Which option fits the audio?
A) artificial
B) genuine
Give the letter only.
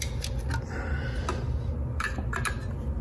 B